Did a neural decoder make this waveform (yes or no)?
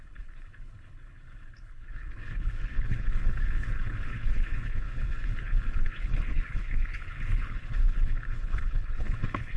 yes